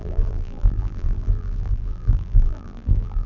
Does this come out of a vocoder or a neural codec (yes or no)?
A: yes